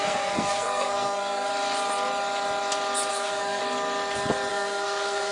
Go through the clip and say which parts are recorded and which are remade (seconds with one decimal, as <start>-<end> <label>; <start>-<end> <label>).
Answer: 0.0-1.5 remade; 1.5-3.1 recorded; 3.1-3.6 remade; 3.6-4.5 recorded; 4.5-5.3 remade